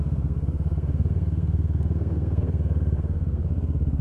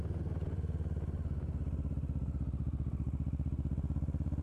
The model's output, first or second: first